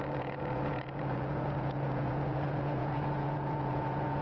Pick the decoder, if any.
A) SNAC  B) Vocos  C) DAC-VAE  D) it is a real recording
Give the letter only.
B